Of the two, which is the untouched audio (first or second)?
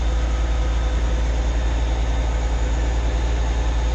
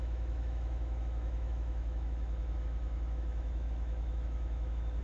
first